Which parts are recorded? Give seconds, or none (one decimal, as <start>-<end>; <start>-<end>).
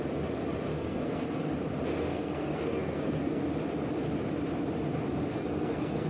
0.0-0.7; 1.5-2.1; 3.4-5.3